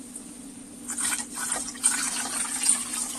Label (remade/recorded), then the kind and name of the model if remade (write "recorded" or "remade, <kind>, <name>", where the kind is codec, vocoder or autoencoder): recorded